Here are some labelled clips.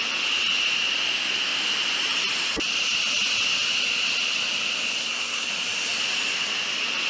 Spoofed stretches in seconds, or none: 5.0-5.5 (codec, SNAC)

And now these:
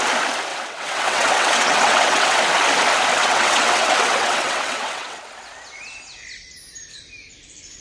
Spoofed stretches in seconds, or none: 0.5-2.4 (vocoder, WaveNeXt); 3.2-5.2

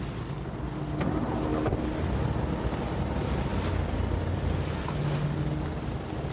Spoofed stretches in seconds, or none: none

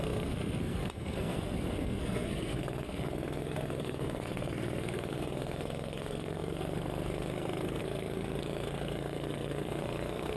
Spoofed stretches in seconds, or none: 0.0-10.4 (codec, SNAC)

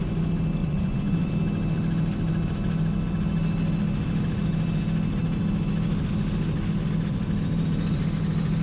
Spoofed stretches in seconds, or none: 0.6-1.3 (vocoder, Vocos)

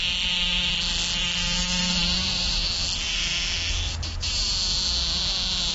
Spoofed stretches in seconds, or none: 1.6-2.0 (autoencoder, DAC-VAE)